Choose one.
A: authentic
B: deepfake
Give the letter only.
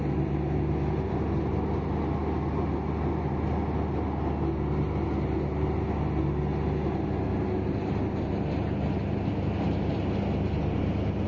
A